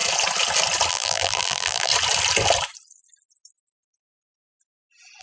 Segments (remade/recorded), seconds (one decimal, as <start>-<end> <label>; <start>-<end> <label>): 0.0-0.9 recorded; 0.9-1.9 remade; 1.9-5.2 recorded